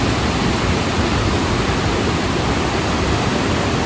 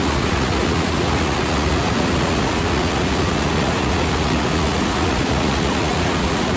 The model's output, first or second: second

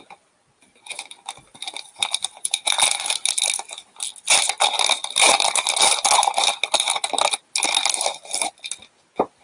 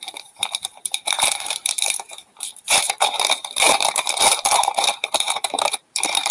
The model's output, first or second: second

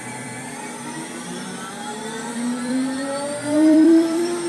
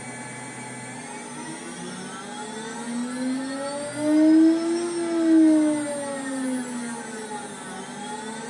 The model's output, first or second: first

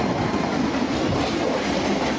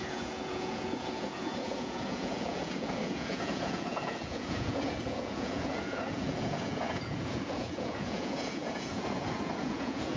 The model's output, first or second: second